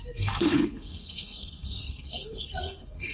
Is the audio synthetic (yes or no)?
yes